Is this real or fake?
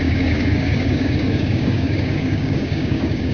fake